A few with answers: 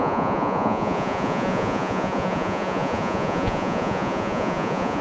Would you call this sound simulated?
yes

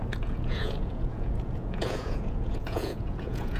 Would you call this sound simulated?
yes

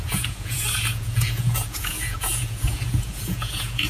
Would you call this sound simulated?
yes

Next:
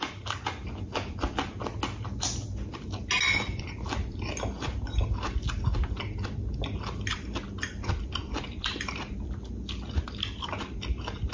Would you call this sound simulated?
no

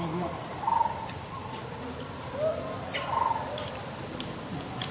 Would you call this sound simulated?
no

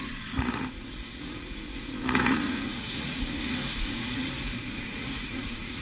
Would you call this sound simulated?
yes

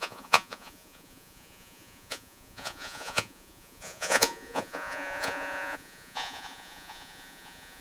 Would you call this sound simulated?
yes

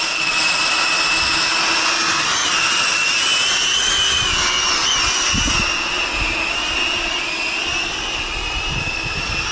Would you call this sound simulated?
no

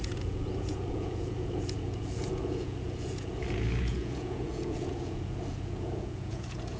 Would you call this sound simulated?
yes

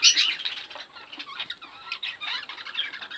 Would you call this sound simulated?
no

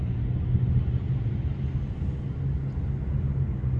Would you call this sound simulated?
no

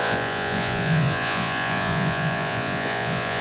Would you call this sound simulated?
yes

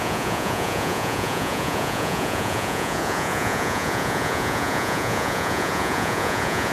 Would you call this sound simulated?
yes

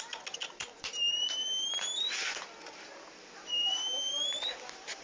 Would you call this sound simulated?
no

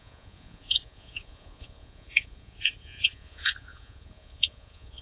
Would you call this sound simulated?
yes